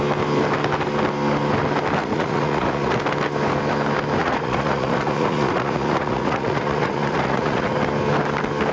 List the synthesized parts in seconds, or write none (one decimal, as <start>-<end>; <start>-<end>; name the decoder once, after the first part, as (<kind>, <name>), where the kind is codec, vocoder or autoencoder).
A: 2.0-3.0 (vocoder, Vocos); 4.2-7.7